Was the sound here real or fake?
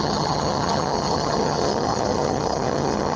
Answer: fake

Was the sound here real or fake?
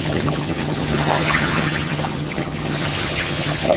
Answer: fake